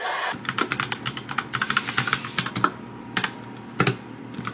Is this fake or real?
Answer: real